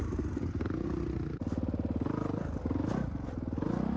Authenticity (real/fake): real